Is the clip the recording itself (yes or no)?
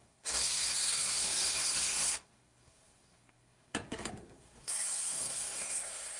no